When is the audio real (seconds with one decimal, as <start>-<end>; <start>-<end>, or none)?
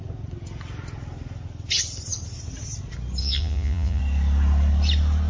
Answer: 0.0-3.2; 4.0-5.3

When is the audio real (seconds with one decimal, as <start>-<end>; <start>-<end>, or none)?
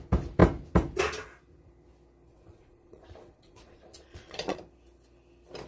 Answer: 0.0-2.3; 4.6-5.7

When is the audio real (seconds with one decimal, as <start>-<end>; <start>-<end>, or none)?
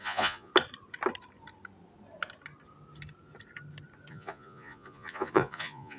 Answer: 0.5-4.1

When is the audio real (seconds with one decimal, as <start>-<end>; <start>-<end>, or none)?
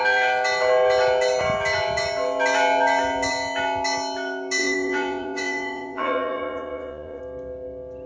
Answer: 0.0-4.6; 7.2-8.1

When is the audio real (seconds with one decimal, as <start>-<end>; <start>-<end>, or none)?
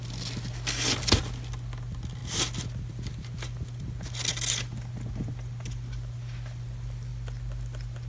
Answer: 0.0-8.1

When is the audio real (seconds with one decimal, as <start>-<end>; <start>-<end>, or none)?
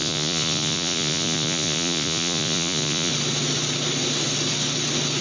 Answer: 3.1-5.2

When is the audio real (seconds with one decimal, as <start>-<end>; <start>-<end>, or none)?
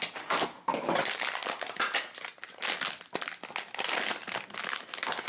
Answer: 0.0-5.3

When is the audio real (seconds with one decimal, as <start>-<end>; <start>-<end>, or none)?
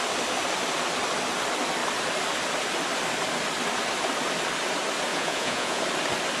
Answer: 0.0-5.1; 5.8-6.4